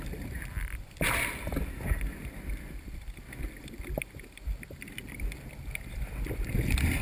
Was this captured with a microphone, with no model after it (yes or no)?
yes